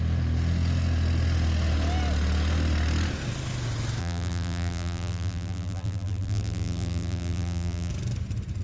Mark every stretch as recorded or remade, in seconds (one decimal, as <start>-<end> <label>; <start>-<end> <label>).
0.0-4.0 recorded; 4.0-7.9 remade; 7.9-8.6 recorded